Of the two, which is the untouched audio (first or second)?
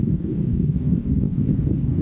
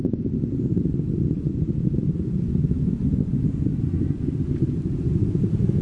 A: second